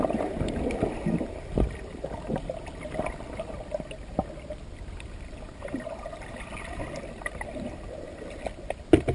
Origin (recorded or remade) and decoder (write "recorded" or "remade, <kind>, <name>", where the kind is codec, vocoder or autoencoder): recorded